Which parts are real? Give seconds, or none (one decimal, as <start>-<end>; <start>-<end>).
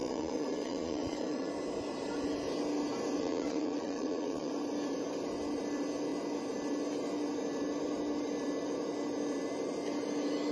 1.5-3.2; 4.5-10.5